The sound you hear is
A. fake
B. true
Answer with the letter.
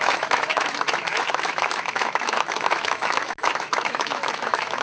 A